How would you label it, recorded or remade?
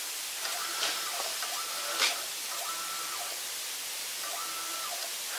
remade